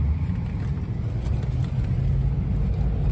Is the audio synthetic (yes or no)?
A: no